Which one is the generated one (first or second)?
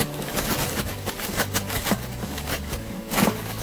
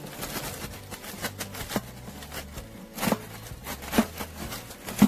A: first